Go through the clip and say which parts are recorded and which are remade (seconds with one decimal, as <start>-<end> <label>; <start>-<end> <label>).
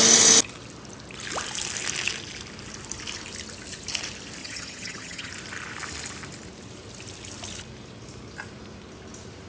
0.0-4.4 recorded; 4.4-5.3 remade; 5.3-9.5 recorded